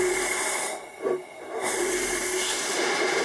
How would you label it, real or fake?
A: real